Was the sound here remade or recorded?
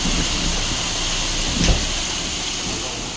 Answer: recorded